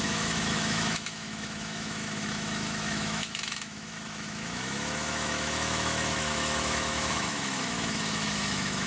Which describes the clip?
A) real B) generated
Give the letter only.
B